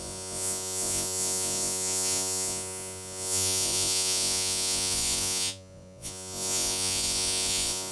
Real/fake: fake